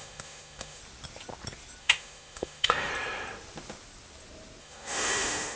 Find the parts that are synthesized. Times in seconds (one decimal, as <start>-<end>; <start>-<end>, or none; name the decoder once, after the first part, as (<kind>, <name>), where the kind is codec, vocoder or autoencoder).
0.0-0.8 (autoencoder, DAC-VAE); 1.8-2.9; 4.6-5.6